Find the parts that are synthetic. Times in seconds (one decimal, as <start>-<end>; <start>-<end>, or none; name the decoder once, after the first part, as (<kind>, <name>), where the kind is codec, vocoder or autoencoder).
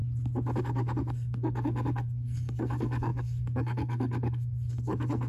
0.6-5.3 (codec, SNAC)